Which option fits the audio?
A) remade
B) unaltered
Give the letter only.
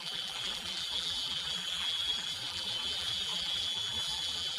A